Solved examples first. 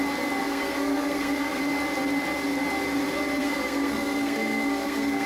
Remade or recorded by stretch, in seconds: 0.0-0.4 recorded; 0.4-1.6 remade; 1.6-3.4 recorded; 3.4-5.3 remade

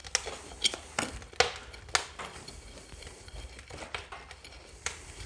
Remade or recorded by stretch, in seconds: 0.0-2.5 recorded; 2.5-5.3 remade

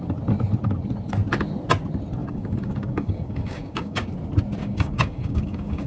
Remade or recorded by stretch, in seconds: 0.0-2.2 recorded; 2.2-4.1 remade; 4.1-4.6 recorded; 4.6-5.9 remade

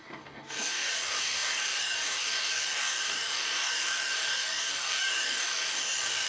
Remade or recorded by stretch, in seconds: 0.0-6.3 remade

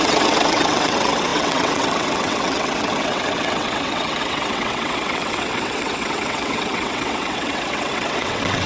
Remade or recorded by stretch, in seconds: 0.0-8.7 remade

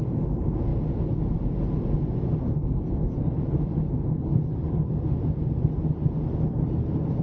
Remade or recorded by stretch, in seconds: 0.0-7.2 recorded

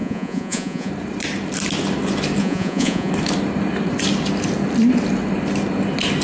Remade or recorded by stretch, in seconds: 0.0-0.9 remade; 0.9-2.4 recorded; 2.4-3.1 remade; 3.1-6.2 recorded